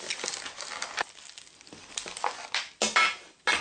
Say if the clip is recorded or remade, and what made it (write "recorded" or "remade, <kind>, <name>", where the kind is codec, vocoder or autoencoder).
recorded